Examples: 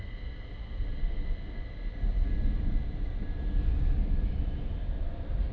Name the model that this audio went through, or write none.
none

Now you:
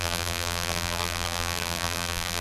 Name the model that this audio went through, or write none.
vocoder, BigVGAN v2